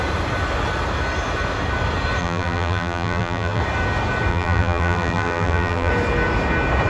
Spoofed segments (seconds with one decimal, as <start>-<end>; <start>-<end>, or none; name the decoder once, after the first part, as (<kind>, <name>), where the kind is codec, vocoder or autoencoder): 2.2-3.6 (vocoder, BigVGAN v2); 4.3-5.9

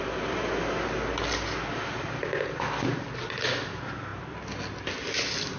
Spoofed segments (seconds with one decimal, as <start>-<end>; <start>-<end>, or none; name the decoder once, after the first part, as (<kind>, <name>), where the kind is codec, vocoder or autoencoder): none

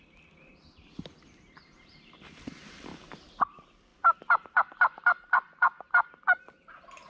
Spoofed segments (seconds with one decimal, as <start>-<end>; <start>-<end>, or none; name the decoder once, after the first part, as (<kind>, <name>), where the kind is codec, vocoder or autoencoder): 0.0-7.1 (vocoder, BigVGAN v2)

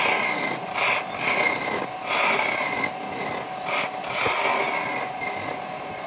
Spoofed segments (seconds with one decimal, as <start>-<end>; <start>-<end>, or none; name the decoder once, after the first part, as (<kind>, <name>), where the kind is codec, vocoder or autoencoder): none

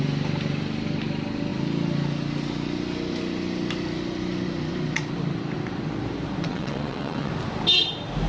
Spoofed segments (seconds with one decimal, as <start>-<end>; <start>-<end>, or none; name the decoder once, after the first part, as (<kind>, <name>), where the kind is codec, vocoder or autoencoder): 6.5-7.3 (vocoder, WaveNeXt)